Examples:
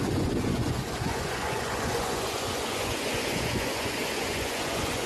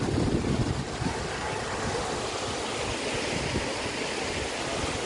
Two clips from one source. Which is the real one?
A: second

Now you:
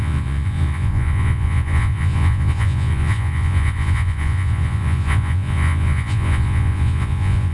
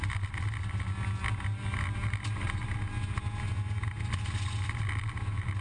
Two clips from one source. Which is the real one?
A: second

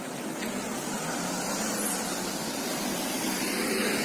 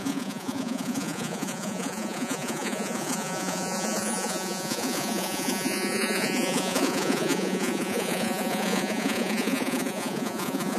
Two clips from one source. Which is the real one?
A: first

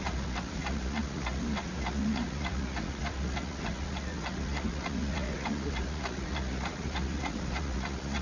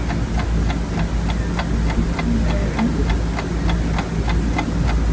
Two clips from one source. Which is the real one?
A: second